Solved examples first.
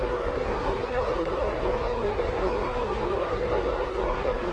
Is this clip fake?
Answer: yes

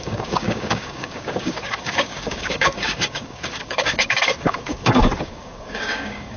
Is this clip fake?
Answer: yes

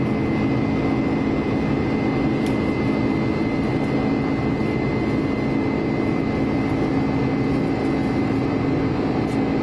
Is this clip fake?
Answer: no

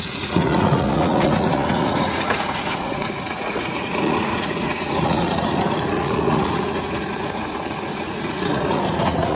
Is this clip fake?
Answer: yes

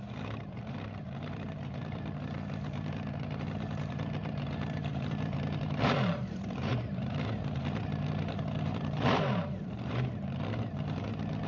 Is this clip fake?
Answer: yes